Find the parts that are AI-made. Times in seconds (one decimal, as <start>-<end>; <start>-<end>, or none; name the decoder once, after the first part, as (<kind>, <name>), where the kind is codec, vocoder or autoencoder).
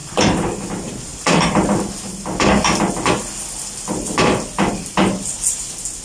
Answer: 0.0-0.7 (vocoder, BigVGAN v2)